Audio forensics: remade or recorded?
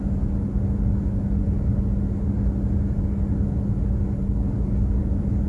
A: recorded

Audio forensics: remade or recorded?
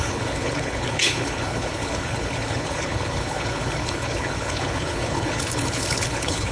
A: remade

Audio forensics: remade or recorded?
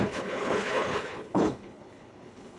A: remade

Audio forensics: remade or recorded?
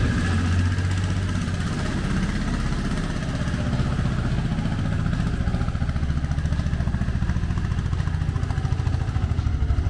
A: recorded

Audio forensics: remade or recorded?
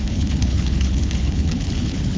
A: remade